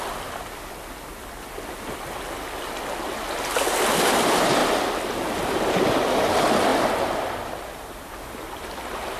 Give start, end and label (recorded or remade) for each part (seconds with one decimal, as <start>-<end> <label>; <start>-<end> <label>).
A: 0.0-9.2 recorded

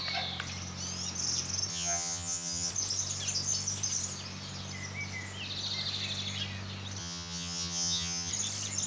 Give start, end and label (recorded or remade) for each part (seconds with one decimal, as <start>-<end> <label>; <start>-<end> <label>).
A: 0.0-1.7 recorded; 1.7-2.7 remade; 2.7-7.0 recorded; 7.0-8.3 remade; 8.3-8.9 recorded

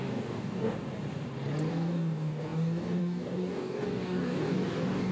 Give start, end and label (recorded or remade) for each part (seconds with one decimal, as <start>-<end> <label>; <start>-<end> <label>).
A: 0.0-0.9 remade; 0.9-1.7 recorded; 1.7-5.1 remade

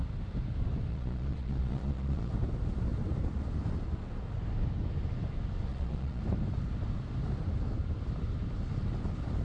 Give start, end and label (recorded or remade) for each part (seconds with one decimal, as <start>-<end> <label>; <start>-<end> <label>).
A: 0.0-0.9 recorded; 0.9-2.3 remade; 2.3-5.7 recorded; 5.7-6.2 remade; 6.2-9.4 recorded

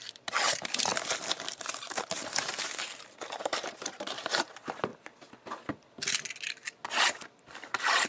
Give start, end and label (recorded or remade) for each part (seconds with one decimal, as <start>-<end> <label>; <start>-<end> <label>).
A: 0.0-4.9 remade; 4.9-7.0 recorded; 7.0-8.1 remade